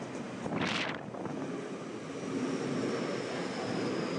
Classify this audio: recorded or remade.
recorded